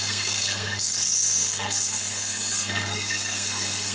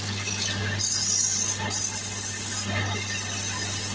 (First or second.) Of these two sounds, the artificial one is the first